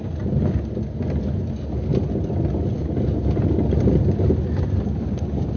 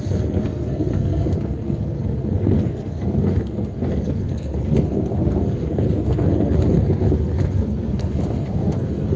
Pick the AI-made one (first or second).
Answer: second